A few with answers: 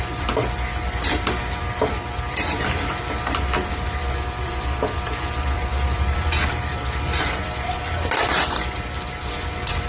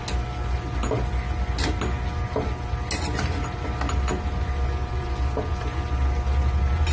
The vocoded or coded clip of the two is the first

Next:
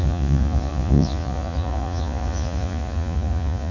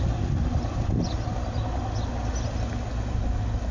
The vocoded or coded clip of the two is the first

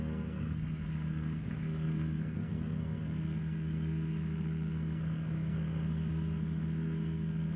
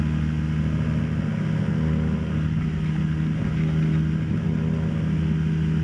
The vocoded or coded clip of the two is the first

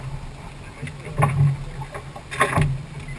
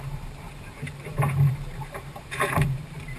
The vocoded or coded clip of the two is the second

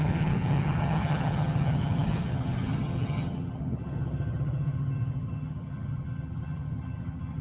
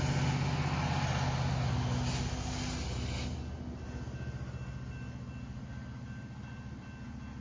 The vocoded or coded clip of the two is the first